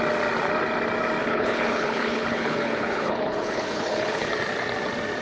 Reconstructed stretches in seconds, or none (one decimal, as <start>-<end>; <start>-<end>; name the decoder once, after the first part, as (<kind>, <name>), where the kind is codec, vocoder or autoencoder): 1.2-4.3 (codec, HILCodec)